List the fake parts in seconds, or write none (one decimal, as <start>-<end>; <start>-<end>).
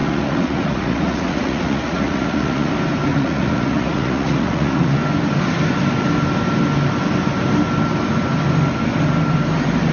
0.0-2.7; 3.1-5.0